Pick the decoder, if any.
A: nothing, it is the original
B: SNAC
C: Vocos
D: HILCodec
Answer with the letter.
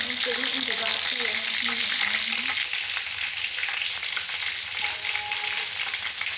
A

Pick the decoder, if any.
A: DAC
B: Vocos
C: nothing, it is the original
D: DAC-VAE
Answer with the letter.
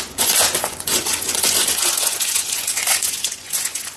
B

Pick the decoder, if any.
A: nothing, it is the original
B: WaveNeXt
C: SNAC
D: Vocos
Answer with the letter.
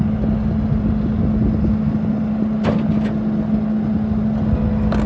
A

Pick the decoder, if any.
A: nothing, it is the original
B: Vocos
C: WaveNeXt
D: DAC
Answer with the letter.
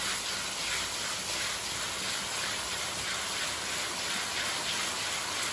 A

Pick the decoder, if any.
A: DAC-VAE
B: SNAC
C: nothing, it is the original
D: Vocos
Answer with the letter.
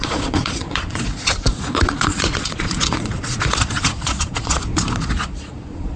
D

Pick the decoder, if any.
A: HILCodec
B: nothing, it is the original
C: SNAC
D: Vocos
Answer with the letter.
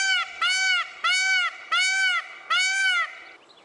B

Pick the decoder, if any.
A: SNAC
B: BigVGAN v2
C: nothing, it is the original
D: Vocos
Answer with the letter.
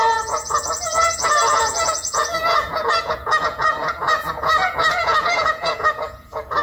D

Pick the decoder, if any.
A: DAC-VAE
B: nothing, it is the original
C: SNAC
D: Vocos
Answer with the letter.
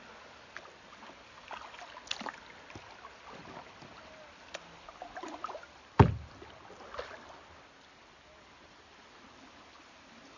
B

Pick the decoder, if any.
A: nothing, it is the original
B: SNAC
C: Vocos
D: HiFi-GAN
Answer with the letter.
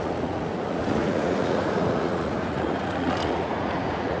C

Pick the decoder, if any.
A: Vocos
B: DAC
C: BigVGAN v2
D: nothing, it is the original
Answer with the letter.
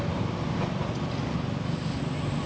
D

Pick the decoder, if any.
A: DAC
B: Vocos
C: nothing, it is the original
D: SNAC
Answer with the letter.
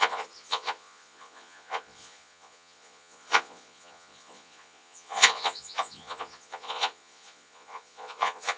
B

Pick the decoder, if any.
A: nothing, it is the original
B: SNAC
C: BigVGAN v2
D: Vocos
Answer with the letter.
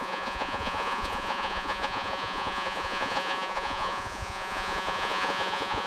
D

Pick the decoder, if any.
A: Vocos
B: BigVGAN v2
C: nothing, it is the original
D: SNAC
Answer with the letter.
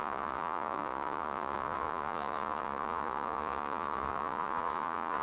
A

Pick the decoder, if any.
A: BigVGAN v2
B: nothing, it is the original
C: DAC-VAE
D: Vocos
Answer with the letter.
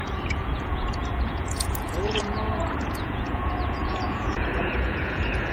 D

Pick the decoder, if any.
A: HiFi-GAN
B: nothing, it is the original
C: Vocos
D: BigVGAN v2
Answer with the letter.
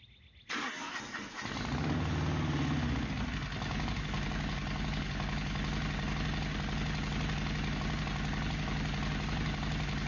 B